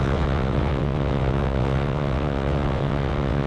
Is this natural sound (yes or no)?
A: no